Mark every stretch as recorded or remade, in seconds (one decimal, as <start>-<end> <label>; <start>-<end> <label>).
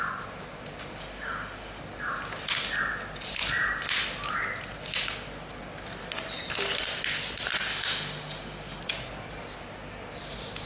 0.0-1.0 recorded; 1.0-1.8 remade; 1.8-7.7 recorded; 7.7-8.8 remade; 8.8-10.7 recorded